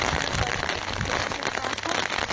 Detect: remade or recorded recorded